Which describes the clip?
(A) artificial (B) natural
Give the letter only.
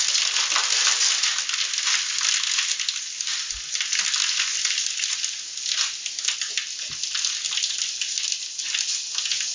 B